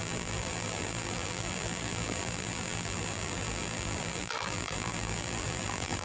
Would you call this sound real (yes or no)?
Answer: no